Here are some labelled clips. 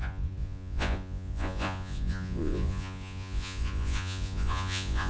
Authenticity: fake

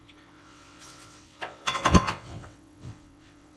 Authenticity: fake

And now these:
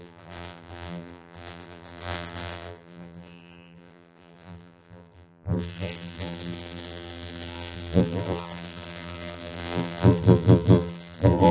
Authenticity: fake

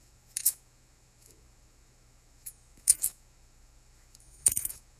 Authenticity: fake